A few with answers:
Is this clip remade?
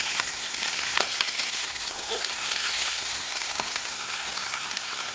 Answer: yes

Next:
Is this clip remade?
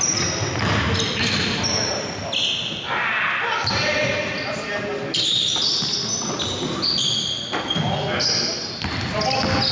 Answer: no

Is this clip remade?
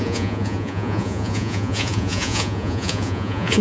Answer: yes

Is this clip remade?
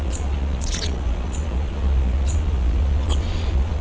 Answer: yes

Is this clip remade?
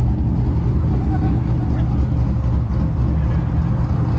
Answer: no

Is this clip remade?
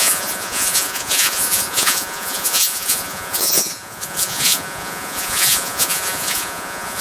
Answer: yes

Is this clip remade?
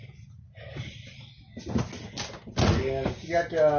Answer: no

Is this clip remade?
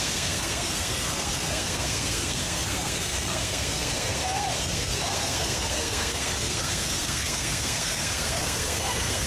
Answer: yes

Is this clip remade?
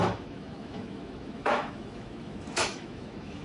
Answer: yes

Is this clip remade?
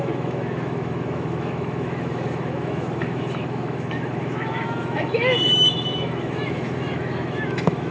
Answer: yes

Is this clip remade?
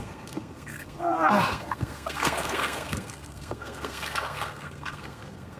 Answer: yes